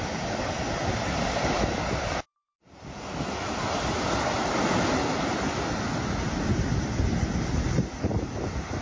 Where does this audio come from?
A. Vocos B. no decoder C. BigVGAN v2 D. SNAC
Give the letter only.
B